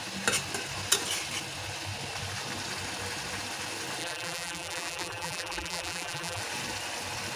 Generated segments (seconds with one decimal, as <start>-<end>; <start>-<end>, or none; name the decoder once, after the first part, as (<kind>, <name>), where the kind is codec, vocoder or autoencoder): 4.0-6.4 (vocoder, BigVGAN v2)